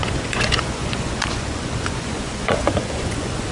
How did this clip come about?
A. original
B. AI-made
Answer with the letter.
B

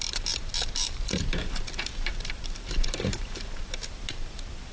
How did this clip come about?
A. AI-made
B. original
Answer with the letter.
A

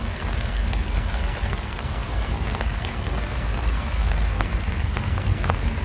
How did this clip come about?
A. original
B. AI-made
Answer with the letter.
B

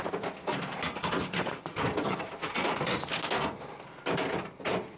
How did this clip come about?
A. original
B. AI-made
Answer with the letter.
A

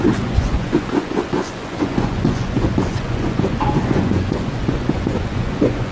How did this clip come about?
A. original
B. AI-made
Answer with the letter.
B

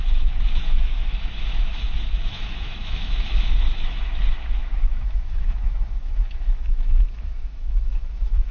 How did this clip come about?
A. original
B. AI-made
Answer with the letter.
B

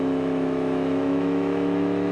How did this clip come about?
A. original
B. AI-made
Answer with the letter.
B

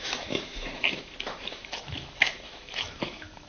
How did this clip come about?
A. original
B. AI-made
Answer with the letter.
B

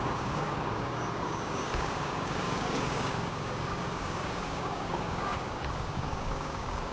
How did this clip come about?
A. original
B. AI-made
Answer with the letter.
B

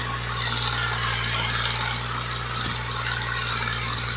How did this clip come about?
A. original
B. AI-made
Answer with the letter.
A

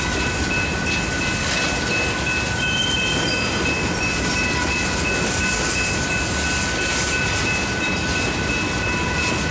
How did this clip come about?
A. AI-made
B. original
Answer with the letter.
B